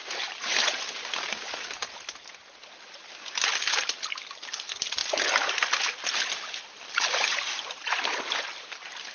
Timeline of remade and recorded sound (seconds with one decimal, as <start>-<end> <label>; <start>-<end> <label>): 0.0-1.9 remade; 1.9-9.1 recorded